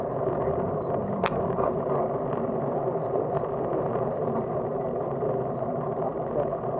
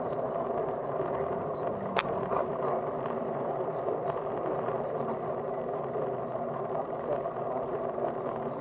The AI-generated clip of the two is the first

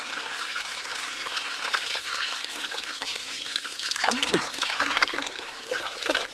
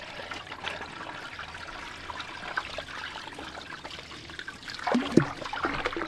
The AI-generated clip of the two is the first